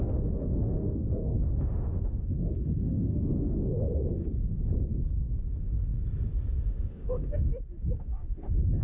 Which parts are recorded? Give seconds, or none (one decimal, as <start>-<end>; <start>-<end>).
3.6-6.6; 7.5-8.0